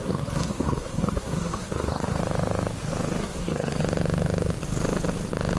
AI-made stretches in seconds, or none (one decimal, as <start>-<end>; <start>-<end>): 0.0-2.2; 3.2-3.8